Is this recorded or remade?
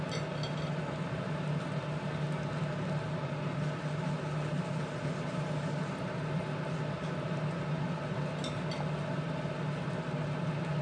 recorded